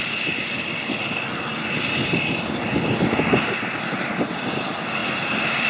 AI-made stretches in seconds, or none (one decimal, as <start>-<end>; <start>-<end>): 5.0-5.7